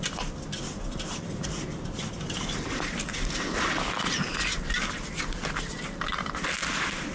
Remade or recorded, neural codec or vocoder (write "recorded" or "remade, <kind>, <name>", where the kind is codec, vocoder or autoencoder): recorded